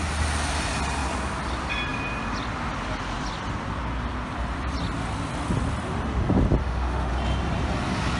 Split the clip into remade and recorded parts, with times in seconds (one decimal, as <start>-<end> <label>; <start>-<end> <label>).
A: 0.0-6.6 recorded; 6.6-7.1 remade; 7.1-8.2 recorded